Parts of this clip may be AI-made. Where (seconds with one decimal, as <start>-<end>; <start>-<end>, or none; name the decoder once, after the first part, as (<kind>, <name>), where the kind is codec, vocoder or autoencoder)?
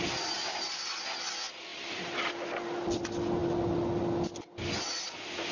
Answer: 1.7-2.6 (vocoder, BigVGAN v2)